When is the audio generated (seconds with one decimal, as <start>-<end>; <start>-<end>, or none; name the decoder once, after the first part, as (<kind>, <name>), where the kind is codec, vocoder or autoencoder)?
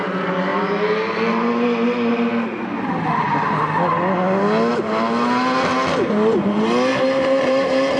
6.9-8.0 (vocoder, BigVGAN v2)